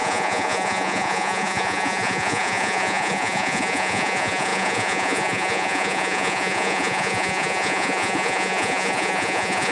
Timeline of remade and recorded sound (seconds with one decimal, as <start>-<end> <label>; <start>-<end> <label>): 0.0-9.7 remade